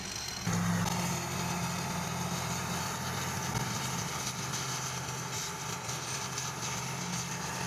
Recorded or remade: recorded